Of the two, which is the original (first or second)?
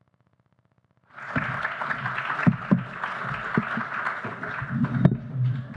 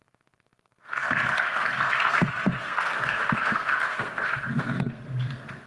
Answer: first